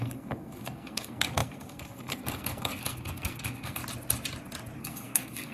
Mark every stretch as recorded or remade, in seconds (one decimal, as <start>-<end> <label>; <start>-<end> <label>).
0.0-3.8 remade; 3.8-4.8 recorded; 4.8-5.5 remade